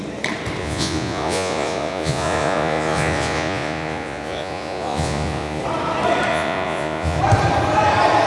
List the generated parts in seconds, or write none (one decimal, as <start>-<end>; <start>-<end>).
0.6-5.6; 6.3-7.2